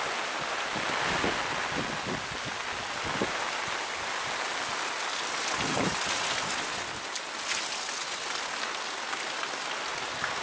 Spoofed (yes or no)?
no